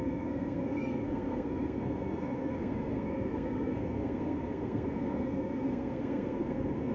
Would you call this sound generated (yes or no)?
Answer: yes